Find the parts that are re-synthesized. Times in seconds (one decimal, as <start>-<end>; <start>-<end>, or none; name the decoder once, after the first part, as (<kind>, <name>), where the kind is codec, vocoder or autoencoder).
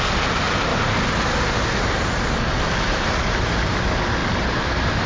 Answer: 0.7-3.8 (vocoder, BigVGAN v2); 4.2-5.1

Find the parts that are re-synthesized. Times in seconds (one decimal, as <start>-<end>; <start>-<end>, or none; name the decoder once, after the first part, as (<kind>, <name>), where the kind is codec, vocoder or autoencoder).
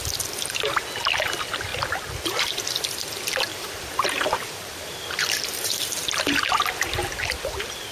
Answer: 3.5-6.2 (vocoder, BigVGAN v2)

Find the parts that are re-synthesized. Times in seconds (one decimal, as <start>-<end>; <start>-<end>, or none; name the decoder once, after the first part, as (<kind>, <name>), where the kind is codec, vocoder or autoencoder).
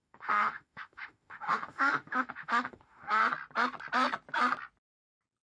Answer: 0.0-3.2 (autoencoder, DAC-VAE)